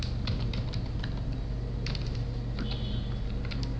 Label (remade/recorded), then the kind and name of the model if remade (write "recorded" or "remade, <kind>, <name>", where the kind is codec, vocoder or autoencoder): recorded